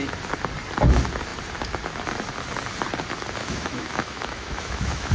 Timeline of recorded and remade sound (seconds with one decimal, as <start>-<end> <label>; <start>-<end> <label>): 0.0-3.4 recorded; 3.4-5.1 remade